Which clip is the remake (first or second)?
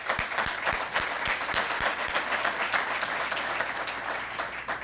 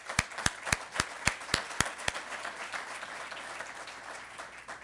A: second